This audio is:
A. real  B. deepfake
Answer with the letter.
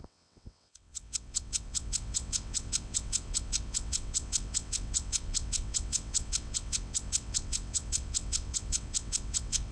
B